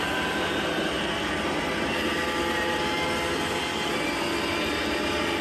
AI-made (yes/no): no